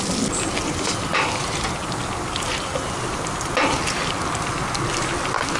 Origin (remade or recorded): recorded